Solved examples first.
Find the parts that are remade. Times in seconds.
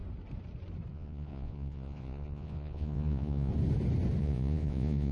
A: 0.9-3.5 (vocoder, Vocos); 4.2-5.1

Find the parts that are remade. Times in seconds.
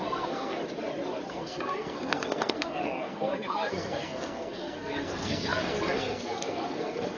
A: 0.0-0.6 (codec, SNAC); 1.3-7.2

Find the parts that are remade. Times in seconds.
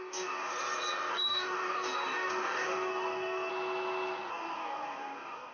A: 0.0-0.5 (codec, DAC); 1.1-3.5; 4.3-5.5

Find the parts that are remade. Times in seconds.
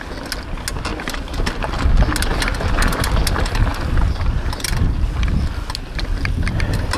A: 3.7-4.8 (vocoder, BigVGAN v2)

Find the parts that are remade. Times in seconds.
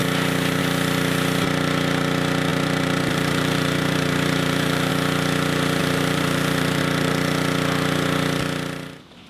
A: 2.5-4.9 (vocoder, BigVGAN v2); 5.8-6.8